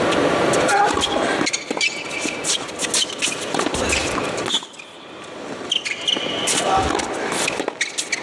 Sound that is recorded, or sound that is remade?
recorded